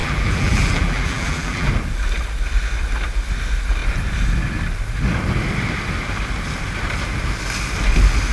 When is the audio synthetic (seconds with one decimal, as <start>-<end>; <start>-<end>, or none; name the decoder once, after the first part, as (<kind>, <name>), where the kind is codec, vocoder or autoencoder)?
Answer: 0.0-1.7 (vocoder, BigVGAN v2)